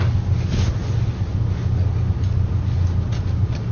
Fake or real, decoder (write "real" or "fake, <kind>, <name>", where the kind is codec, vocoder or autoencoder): real